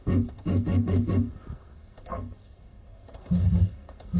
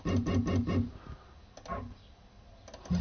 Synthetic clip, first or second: first